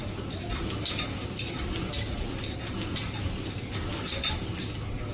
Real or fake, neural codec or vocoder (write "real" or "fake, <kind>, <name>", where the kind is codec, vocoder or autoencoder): real